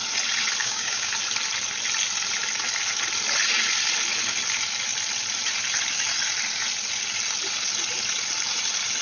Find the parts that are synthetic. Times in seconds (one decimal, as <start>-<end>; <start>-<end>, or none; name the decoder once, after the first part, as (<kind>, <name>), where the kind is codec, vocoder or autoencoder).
0.6-1.1 (codec, DAC)